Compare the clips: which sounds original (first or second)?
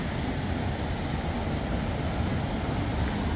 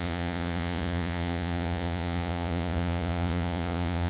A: first